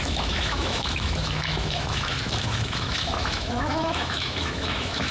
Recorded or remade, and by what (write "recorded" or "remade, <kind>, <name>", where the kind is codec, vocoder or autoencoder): remade, autoencoder, DAC-VAE